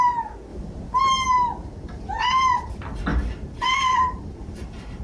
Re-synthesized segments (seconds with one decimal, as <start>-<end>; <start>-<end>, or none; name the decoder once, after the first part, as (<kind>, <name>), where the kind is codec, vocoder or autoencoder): 0.5-1.0 (vocoder, BigVGAN v2); 1.6-2.7; 3.1-5.0